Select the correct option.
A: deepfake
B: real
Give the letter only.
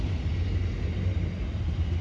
B